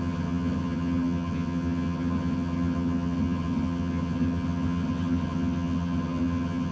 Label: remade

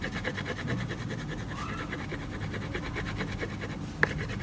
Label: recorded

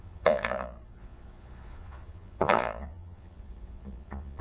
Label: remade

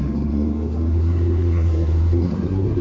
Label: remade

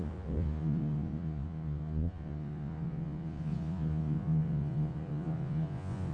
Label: remade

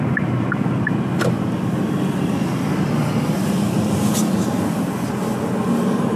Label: recorded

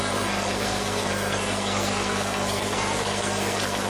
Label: remade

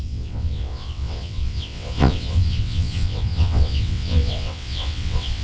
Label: remade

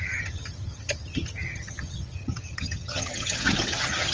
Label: remade